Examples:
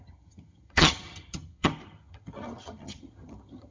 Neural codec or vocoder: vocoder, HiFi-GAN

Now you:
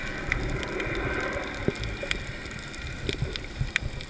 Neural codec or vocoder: none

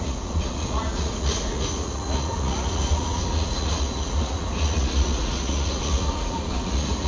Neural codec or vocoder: vocoder, Vocos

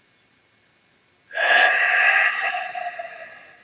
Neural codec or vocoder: none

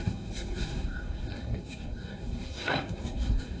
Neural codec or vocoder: codec, SNAC